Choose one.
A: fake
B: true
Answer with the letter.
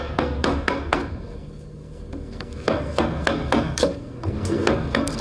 A